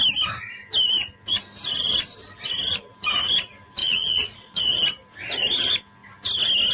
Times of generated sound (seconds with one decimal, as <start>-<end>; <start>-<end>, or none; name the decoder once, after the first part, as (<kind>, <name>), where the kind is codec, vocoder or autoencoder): 3.8-4.6 (vocoder, Vocos)